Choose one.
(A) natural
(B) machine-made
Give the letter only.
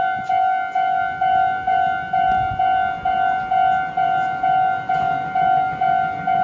A